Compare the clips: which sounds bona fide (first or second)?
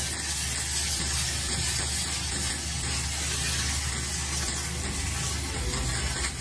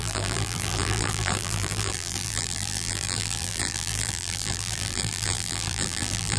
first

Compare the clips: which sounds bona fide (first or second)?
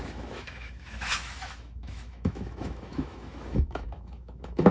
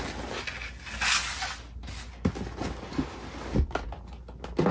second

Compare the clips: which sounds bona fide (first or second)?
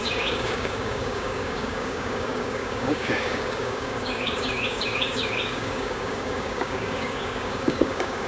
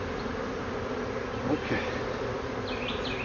second